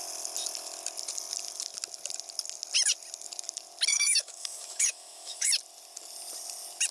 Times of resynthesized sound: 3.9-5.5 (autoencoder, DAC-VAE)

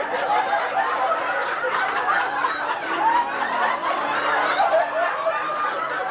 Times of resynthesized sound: none

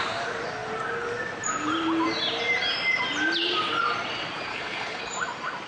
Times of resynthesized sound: 4.5-5.0 (codec, HILCodec)

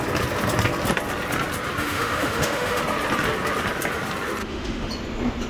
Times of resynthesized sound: 1.8-2.8 (autoencoder, DAC-VAE); 4.4-4.9